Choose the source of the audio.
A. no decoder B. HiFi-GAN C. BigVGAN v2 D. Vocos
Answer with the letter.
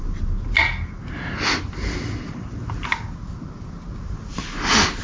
A